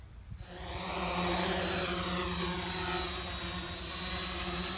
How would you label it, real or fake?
real